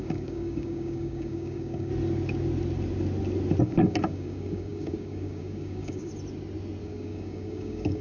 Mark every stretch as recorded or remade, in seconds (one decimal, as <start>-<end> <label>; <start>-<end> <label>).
0.0-1.9 remade; 1.9-3.6 recorded; 3.6-6.1 remade; 6.1-6.8 recorded; 6.8-8.0 remade